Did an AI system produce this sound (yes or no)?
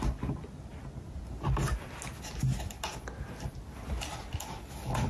no